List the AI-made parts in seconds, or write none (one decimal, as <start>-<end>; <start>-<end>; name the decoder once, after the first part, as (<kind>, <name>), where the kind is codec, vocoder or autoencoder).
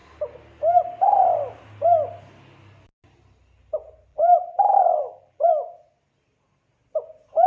4.1-5.5 (vocoder, BigVGAN v2)